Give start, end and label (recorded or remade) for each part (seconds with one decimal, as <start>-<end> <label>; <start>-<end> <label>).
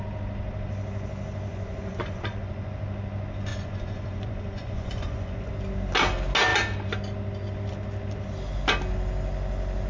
0.0-1.5 recorded; 1.5-2.7 remade; 2.7-3.5 recorded; 3.5-5.5 remade; 5.5-9.9 recorded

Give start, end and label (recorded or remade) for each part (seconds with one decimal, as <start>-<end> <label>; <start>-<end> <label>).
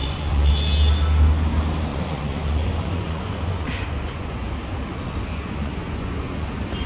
0.0-0.5 remade; 0.5-1.9 recorded; 1.9-4.5 remade; 4.5-5.3 recorded; 5.3-6.5 remade; 6.5-6.9 recorded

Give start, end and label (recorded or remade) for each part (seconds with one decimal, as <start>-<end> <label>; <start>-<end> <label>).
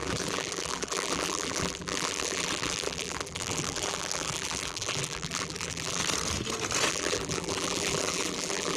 0.0-6.0 remade; 6.0-6.9 recorded; 6.9-8.8 remade